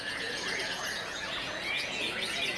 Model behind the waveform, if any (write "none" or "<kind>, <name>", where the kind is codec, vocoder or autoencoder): vocoder, Vocos